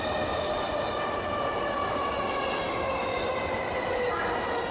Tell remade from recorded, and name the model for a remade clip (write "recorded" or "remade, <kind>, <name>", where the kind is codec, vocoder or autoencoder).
recorded